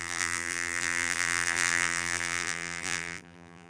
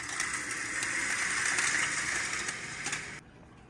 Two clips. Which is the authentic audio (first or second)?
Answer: second